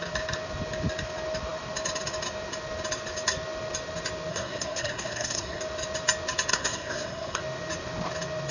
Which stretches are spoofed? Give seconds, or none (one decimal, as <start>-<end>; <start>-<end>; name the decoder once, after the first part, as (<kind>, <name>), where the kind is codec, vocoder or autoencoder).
4.3-5.6 (codec, SNAC); 6.5-7.4